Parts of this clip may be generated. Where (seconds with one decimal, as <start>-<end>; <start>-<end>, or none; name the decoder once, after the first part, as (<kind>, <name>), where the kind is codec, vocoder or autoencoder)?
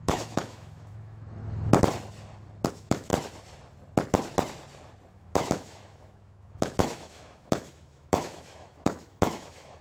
0.0-1.4 (autoencoder, DAC-VAE); 2.7-3.1; 5.1-9.8